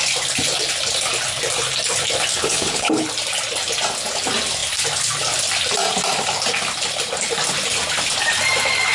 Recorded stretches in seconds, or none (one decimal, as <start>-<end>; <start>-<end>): 0.0-2.3; 3.1-8.9